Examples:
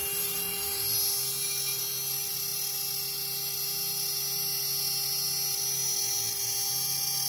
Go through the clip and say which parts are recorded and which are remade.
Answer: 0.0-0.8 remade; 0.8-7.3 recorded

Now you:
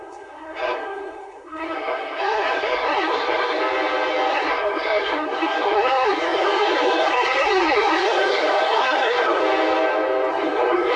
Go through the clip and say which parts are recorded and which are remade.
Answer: 0.0-3.6 remade; 3.6-4.3 recorded; 4.3-9.4 remade; 9.4-10.3 recorded; 10.3-11.0 remade

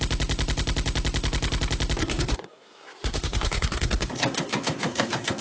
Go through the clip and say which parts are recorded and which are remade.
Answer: 0.0-2.0 recorded; 2.0-5.4 remade

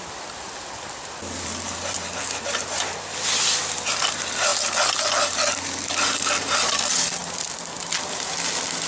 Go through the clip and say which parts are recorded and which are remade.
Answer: 0.0-4.5 remade; 4.5-5.1 recorded; 5.1-8.9 remade

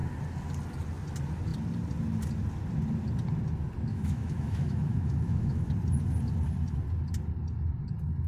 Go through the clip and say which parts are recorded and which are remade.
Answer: 0.0-3.9 recorded; 3.9-5.7 remade; 5.7-8.3 recorded

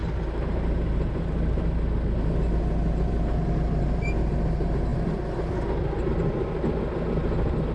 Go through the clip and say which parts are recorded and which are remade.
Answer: 0.0-7.7 recorded